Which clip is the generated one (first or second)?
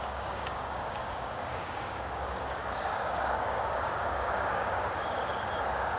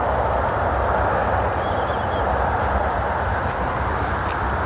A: first